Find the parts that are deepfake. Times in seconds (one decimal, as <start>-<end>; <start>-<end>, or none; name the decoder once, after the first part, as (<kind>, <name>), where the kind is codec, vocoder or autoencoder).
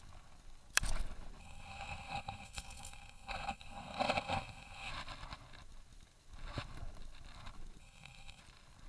1.4-4.9 (codec, SNAC); 7.8-8.4